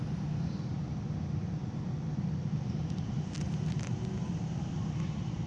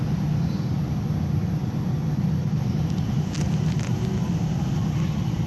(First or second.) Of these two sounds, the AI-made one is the first